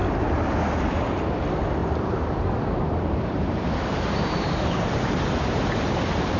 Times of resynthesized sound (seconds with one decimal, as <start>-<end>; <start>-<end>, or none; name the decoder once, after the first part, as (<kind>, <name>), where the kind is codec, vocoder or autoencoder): 1.8-5.6 (vocoder, BigVGAN v2)